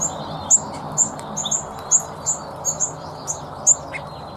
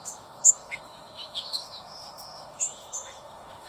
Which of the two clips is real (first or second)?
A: first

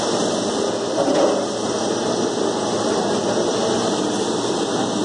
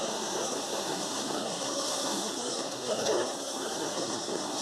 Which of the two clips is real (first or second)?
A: first